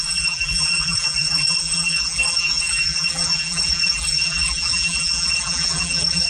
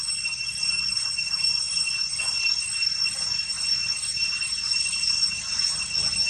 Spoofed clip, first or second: first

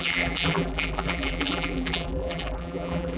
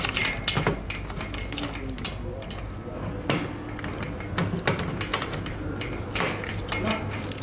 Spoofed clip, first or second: first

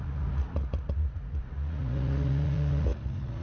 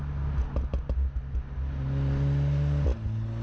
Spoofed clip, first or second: first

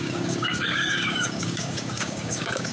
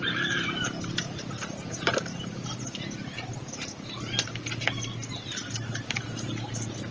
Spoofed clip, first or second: first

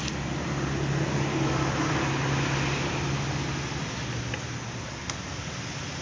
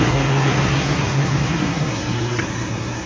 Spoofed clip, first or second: second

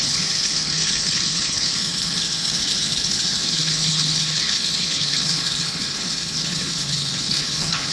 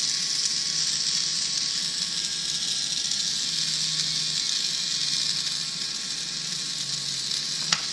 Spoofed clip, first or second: first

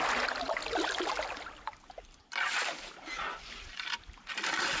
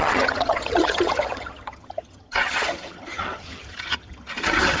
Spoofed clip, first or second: second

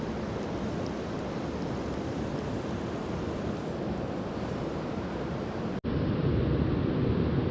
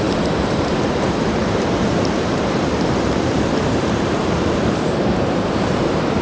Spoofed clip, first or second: second